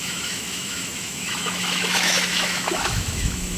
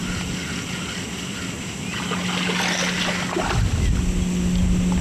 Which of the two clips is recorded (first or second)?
second